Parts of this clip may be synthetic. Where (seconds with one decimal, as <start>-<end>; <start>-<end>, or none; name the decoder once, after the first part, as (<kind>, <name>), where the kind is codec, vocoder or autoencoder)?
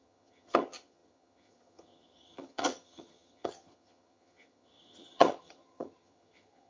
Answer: 0.0-6.7 (vocoder, HiFi-GAN)